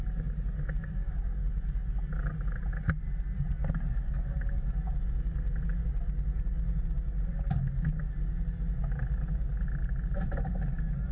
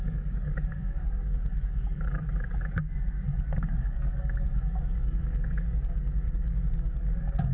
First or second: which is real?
first